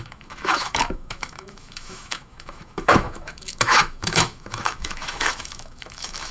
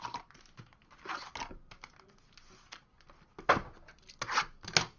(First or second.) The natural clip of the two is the second